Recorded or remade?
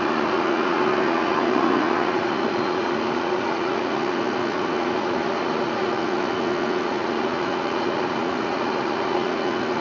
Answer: remade